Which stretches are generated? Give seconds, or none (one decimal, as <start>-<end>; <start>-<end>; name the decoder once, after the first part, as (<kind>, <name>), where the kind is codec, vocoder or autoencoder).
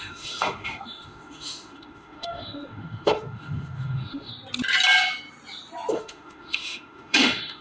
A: 0.0-4.3 (autoencoder, DAC-VAE); 5.9-7.6